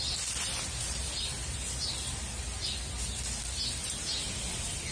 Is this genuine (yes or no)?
yes